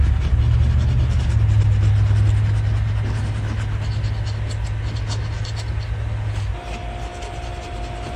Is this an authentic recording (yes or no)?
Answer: yes